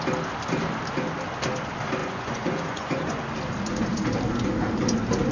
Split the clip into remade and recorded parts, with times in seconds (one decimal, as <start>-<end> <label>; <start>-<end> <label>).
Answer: 0.0-2.0 recorded; 2.0-3.2 remade; 3.2-5.3 recorded